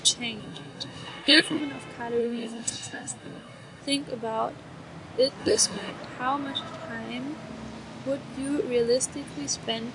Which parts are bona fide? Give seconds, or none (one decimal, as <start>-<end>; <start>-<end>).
0.0-0.4; 1.6-2.2; 3.8-5.4; 5.9-9.9